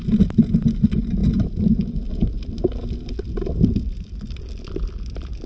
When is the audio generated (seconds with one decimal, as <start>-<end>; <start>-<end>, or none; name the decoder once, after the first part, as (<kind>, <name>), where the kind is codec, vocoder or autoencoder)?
none